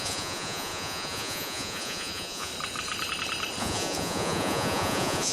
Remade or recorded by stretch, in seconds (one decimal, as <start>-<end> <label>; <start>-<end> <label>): 0.0-2.5 remade; 2.5-3.6 recorded; 3.6-5.3 remade